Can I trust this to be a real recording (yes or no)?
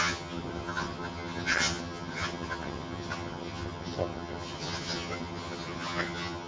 no